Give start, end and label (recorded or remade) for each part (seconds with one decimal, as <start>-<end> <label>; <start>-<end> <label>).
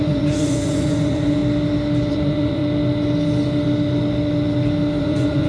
0.0-1.4 remade; 1.4-2.1 recorded; 2.1-2.6 remade; 2.6-5.0 recorded; 5.0-5.5 remade